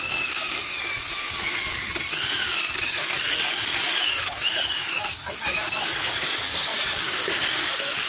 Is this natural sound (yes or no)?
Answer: no